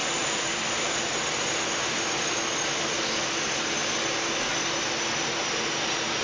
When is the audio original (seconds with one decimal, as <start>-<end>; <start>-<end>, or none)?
1.0-6.2